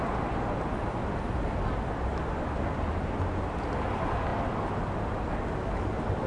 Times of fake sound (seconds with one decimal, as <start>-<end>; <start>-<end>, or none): none